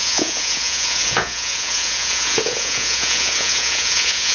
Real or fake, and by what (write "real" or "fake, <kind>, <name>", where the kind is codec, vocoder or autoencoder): fake, vocoder, Vocos